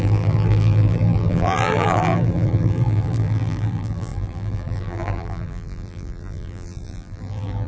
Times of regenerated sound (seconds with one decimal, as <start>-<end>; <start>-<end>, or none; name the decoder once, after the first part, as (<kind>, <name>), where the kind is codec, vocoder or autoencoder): 0.0-7.7 (vocoder, BigVGAN v2)